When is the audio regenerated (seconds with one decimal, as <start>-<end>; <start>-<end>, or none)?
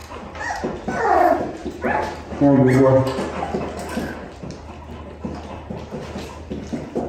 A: none